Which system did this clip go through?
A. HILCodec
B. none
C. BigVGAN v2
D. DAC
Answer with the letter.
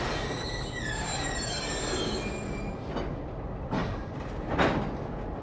B